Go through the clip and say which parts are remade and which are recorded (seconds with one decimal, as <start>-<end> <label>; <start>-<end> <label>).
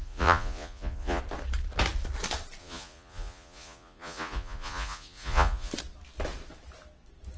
0.0-1.2 remade; 1.2-2.6 recorded; 2.6-5.7 remade; 5.7-7.4 recorded